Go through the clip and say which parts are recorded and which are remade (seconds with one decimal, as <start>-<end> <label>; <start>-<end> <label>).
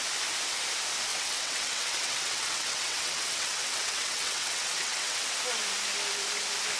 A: 0.0-1.1 recorded; 1.1-5.2 remade; 5.2-6.8 recorded